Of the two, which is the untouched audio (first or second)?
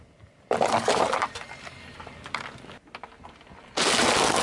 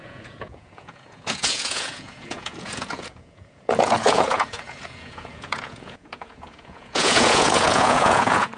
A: first